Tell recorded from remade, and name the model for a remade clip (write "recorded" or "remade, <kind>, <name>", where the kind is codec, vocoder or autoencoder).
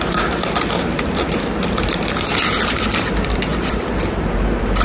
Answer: remade, vocoder, BigVGAN v2